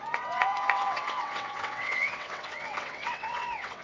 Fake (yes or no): yes